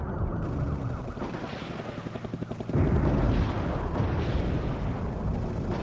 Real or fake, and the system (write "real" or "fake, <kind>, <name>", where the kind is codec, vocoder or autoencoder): real